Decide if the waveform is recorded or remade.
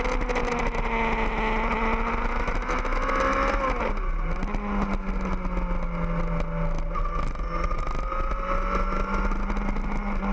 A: recorded